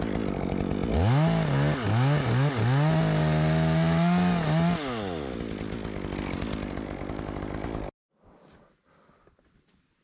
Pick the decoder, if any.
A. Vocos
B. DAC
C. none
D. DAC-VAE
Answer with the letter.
C